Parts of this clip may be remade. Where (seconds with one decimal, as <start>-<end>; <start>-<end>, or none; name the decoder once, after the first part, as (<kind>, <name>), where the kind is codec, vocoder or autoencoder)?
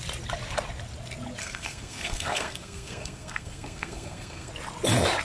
1.4-4.5 (codec, SNAC)